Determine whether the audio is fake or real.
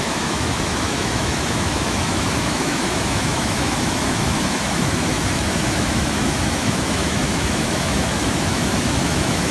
fake